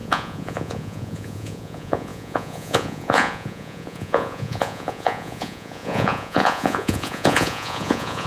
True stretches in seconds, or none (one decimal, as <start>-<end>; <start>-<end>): none